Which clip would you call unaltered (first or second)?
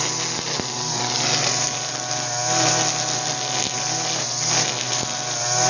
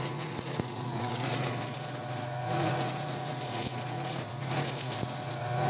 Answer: first